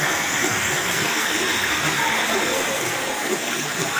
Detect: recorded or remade remade